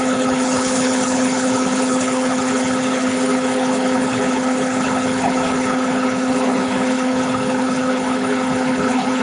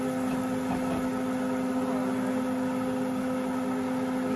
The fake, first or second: first